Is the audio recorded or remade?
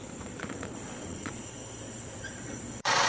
remade